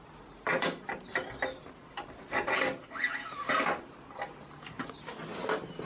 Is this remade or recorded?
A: recorded